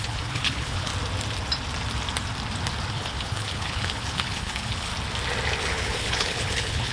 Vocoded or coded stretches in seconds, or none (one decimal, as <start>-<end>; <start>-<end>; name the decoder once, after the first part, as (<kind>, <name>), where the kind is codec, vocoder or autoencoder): 0.0-0.9 (codec, HILCodec); 2.9-4.9; 5.6-6.9